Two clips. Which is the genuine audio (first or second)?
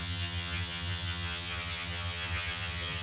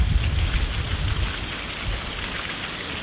second